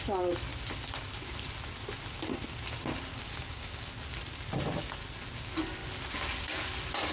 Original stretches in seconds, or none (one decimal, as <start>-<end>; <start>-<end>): 0.0-3.1; 3.9-7.1